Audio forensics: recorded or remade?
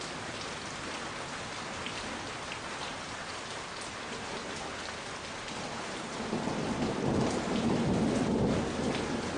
recorded